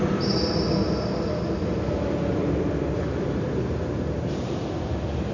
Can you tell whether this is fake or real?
real